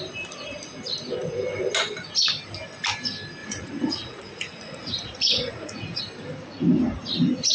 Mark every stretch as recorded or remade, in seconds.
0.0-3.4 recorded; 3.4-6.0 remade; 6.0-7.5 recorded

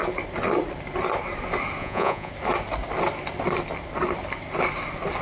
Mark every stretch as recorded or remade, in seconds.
0.0-1.8 recorded; 1.8-2.3 remade; 2.3-5.2 recorded

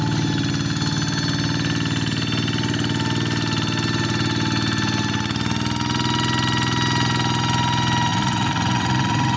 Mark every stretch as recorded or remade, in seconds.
0.0-8.1 recorded; 8.1-9.4 remade